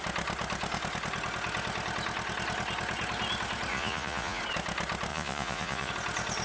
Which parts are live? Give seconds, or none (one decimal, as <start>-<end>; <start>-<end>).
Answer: 0.0-3.7; 4.4-5.1; 5.9-6.4